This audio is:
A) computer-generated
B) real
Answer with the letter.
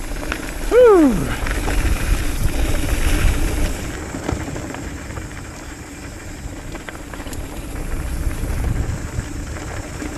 B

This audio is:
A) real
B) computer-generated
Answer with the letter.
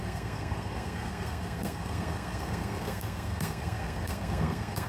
B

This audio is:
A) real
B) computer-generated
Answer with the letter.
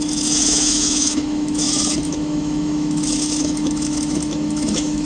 B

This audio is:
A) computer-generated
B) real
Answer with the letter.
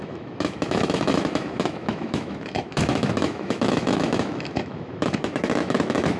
A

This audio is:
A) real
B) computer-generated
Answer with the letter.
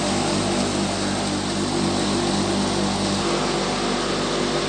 A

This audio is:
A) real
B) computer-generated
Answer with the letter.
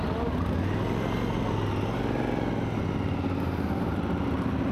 A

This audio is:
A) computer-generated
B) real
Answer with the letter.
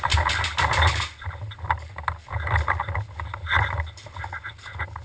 B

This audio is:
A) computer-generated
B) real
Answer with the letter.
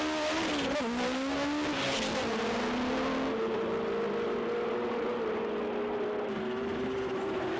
B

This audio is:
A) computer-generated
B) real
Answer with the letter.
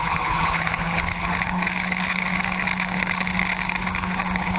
A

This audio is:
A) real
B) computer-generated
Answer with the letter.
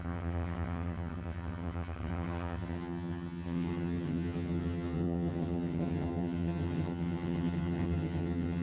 B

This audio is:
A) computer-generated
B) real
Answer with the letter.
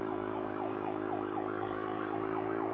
A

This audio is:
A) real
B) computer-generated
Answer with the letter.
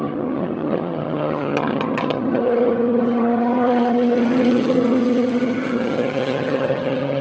B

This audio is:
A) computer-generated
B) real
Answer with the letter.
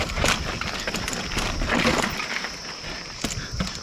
B